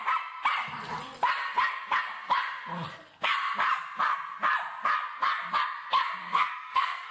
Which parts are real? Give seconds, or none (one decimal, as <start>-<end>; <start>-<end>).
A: 0.0-6.2